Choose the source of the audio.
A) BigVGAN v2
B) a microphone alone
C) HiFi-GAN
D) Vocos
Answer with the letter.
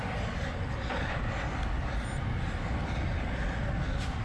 B